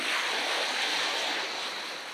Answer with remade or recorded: recorded